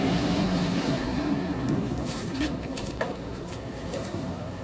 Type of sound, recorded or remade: remade